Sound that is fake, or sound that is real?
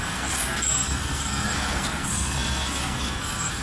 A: fake